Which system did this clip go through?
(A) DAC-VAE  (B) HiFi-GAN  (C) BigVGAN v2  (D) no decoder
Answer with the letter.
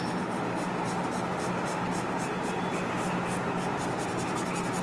D